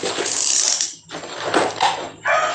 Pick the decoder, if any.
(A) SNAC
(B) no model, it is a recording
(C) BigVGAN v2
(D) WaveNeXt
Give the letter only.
B